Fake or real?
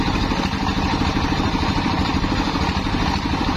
fake